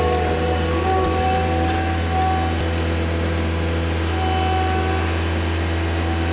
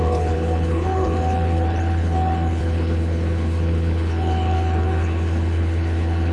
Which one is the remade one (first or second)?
second